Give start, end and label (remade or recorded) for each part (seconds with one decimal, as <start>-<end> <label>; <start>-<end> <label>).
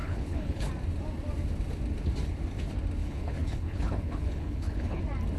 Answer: 0.0-0.7 remade; 0.7-3.0 recorded; 3.0-5.0 remade; 5.0-5.4 recorded